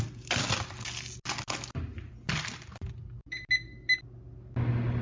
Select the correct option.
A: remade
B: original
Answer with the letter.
B